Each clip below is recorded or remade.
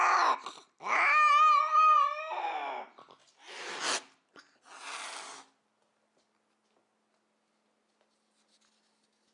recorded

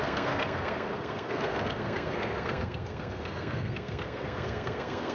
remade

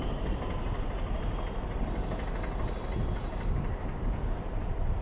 recorded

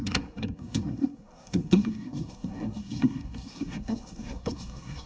remade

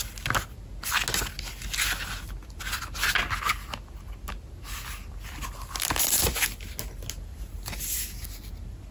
recorded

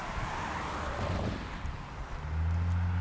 recorded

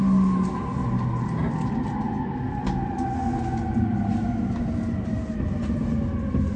recorded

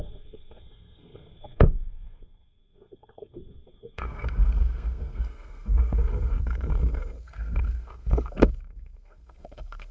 remade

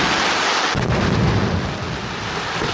recorded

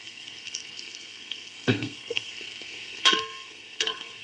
remade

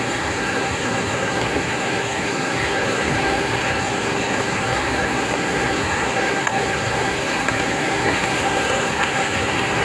remade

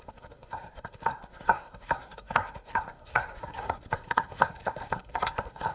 remade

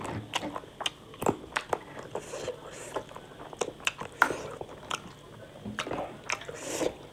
recorded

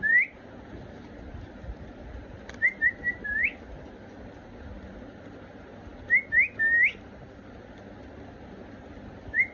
recorded